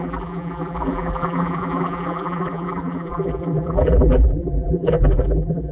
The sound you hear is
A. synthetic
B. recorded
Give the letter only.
A